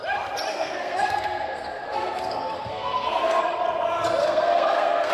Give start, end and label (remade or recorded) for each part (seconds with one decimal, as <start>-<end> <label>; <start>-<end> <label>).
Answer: 0.0-0.5 recorded; 0.5-3.4 remade; 3.4-4.2 recorded; 4.2-5.1 remade